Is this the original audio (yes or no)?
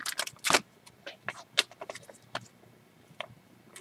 yes